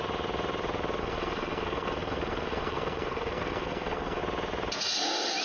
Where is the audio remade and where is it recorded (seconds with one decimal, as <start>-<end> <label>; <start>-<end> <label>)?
0.0-1.0 recorded; 1.0-4.2 remade; 4.2-5.4 recorded